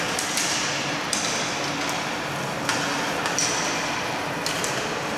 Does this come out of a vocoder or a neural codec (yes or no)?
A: no